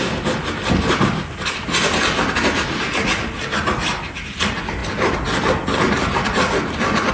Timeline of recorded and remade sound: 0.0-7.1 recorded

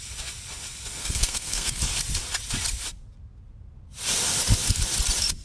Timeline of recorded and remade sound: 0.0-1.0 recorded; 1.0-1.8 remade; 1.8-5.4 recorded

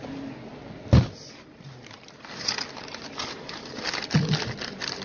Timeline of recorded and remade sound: 0.0-5.0 recorded

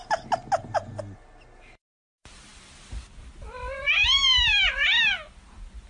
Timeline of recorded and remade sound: 0.0-5.9 recorded

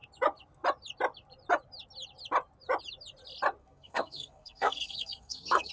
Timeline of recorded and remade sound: 0.0-3.6 recorded; 3.6-5.7 remade

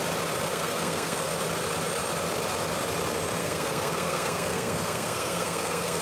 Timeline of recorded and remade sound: 0.0-0.5 recorded; 0.5-1.3 remade; 1.3-3.4 recorded; 3.4-6.0 remade

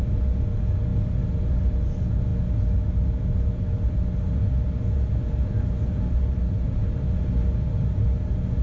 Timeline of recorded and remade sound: 0.0-8.6 recorded

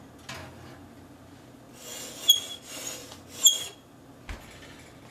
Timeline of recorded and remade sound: 0.0-5.1 recorded